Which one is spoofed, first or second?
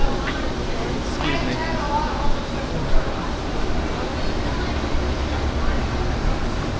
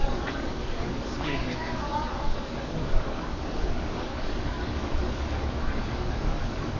second